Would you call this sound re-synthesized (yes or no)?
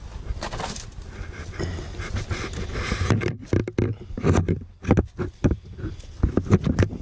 no